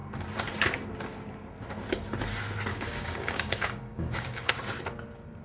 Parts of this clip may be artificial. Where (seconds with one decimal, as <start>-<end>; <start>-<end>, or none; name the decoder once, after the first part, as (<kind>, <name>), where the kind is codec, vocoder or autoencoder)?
2.7-4.5 (codec, DAC)

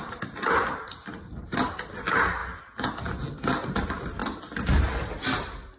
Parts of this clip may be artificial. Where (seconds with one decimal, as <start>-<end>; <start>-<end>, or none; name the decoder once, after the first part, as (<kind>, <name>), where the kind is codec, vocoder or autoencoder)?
none

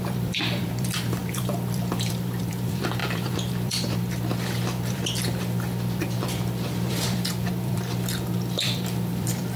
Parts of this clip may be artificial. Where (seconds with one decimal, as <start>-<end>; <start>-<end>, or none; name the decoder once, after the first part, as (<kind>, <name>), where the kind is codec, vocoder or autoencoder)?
0.0-9.6 (vocoder, BigVGAN v2)

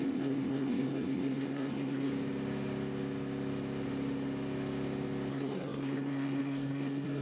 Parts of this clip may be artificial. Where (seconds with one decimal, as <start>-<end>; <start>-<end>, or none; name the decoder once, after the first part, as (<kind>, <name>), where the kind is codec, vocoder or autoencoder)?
0.0-2.1 (codec, SNAC); 5.3-7.2

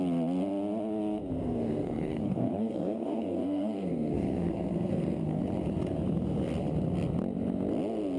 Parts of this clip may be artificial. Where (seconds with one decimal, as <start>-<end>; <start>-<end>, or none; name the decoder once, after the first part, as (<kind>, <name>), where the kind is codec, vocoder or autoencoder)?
1.4-5.4 (codec, SNAC)

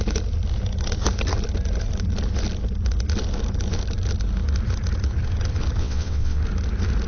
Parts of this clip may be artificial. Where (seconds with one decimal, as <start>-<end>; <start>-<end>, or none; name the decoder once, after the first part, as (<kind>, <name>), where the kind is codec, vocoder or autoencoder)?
5.8-6.4 (vocoder, WaveNeXt)